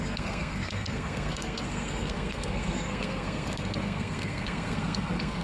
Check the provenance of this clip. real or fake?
fake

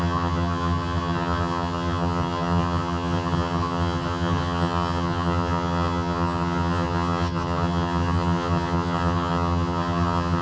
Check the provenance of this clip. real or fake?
fake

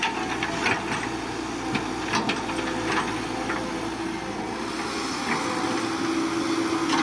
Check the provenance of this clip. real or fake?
real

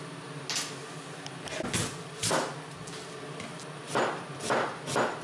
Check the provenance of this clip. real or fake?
real